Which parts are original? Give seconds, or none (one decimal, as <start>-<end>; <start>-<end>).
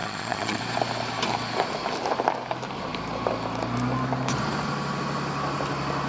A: 0.6-6.1